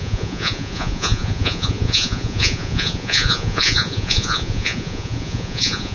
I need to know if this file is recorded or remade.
remade